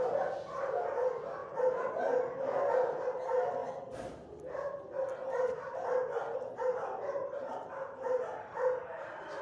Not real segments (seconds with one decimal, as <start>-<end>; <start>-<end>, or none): none